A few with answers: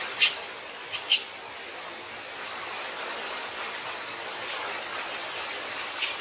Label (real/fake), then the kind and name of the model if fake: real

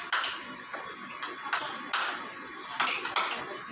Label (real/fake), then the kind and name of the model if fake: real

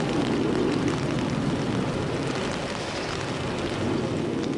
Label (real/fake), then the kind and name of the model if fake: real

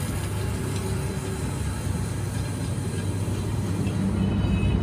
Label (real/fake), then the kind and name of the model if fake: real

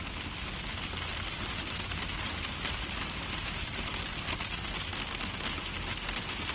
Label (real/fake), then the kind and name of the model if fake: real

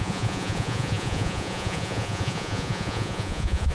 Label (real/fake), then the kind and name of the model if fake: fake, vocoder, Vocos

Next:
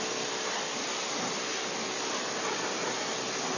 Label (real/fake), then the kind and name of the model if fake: real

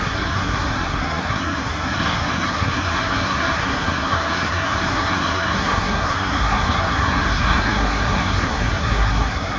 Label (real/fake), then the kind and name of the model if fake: fake, codec, SNAC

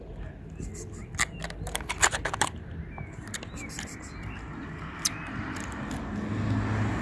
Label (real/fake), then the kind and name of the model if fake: real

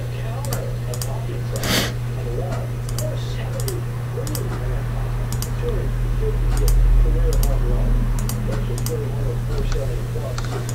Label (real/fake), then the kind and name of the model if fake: real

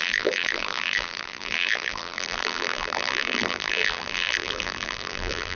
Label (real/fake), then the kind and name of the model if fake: fake, vocoder, BigVGAN v2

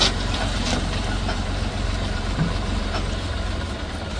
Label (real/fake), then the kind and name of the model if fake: fake, vocoder, BigVGAN v2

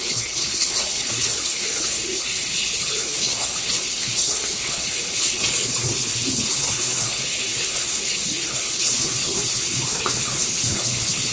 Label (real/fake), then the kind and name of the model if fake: fake, codec, HILCodec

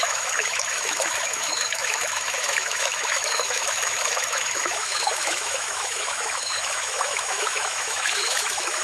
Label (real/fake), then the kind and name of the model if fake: fake, autoencoder, DAC-VAE